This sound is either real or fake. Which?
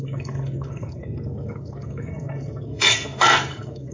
fake